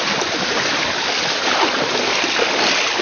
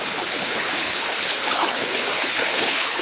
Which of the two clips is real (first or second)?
first